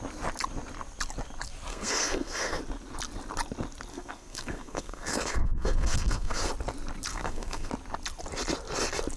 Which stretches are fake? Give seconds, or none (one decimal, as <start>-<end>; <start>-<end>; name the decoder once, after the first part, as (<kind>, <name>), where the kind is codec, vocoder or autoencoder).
1.7-2.6 (codec, SNAC); 3.9-6.5; 7.1-7.7